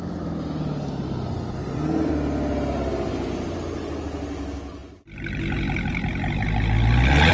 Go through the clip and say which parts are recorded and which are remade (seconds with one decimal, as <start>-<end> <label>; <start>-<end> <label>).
0.0-1.6 recorded; 1.6-2.1 remade; 2.1-7.3 recorded